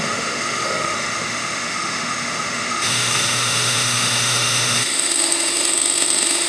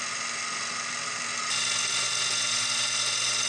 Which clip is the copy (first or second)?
first